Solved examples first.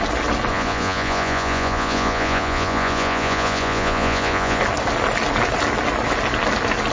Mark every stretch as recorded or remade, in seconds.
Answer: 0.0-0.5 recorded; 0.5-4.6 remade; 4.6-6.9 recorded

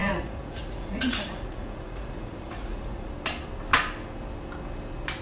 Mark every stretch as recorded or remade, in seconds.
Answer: 0.0-3.1 remade; 3.1-5.2 recorded

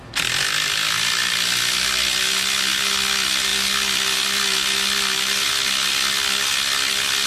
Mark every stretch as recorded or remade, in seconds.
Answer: 0.0-7.3 recorded

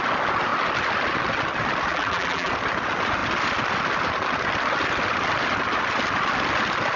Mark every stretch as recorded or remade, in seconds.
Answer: 0.0-1.9 recorded; 1.9-2.5 remade; 2.5-7.0 recorded

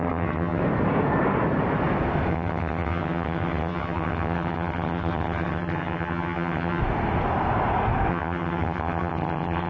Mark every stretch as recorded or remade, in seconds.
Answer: 0.0-0.6 remade; 0.6-2.3 recorded; 2.3-6.8 remade; 6.8-8.1 recorded; 8.1-9.7 remade